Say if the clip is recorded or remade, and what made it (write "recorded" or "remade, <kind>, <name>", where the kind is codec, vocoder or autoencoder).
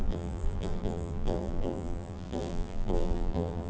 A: remade, vocoder, BigVGAN v2